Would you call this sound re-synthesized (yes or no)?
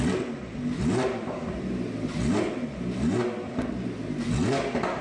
no